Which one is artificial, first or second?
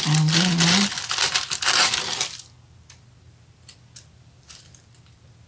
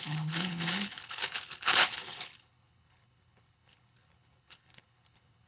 second